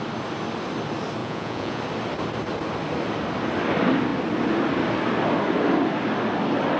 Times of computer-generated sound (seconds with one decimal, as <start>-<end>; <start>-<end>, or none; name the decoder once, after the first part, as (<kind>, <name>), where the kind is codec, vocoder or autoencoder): 1.2-1.8 (vocoder, Vocos)